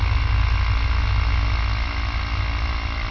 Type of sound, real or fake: real